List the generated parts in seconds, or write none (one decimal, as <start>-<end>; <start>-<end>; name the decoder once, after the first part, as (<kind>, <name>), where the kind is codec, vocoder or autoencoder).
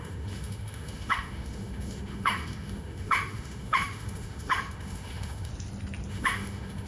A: 0.0-5.5 (autoencoder, DAC-VAE); 6.1-6.9